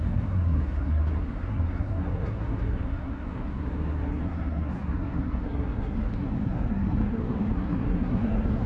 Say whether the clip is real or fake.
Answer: fake